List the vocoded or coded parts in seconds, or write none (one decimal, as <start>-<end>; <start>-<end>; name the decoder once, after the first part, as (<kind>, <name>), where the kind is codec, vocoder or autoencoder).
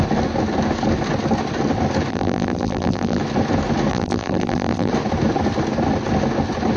2.1-3.2 (vocoder, BigVGAN v2); 3.9-4.9